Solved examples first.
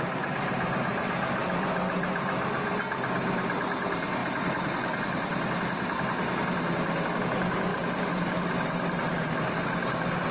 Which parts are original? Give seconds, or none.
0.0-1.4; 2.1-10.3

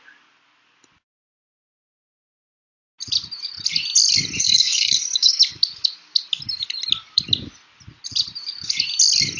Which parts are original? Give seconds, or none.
0.0-4.4; 5.4-9.4

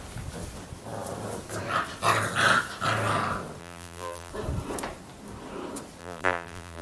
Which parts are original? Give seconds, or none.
0.0-3.6; 4.3-6.0